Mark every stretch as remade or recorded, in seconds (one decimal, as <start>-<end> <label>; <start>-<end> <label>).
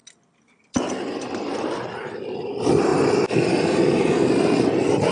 0.0-5.1 recorded